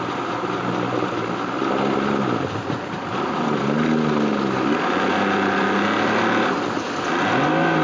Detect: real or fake real